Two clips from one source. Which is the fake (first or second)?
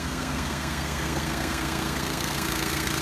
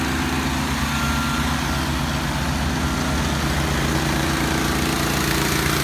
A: first